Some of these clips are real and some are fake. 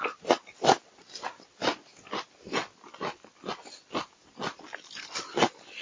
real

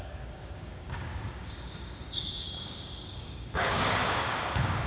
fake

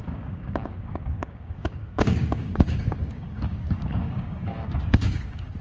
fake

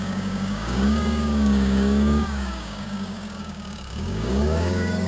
fake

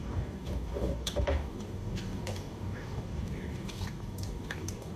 fake